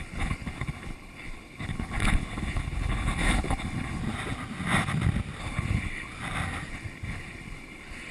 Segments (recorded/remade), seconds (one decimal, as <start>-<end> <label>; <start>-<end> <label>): 0.0-4.0 remade; 4.0-5.4 recorded; 5.4-6.1 remade; 6.1-6.7 recorded; 6.7-8.1 remade